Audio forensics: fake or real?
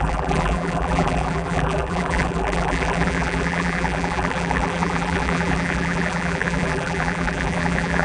fake